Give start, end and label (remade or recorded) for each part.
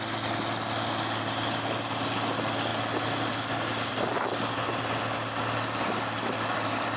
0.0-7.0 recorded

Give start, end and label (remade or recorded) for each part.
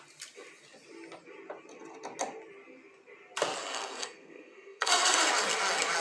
0.0-3.6 recorded; 3.6-5.2 remade; 5.2-6.0 recorded